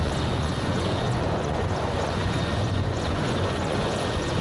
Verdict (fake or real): fake